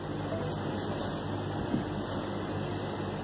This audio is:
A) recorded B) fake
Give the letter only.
A